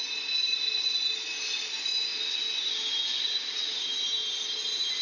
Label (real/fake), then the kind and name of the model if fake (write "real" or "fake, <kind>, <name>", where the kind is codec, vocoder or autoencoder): real